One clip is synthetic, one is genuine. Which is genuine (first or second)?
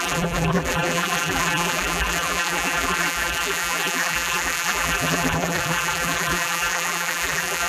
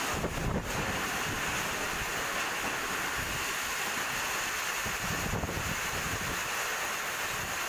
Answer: second